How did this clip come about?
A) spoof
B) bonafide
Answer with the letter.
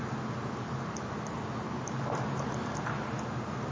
B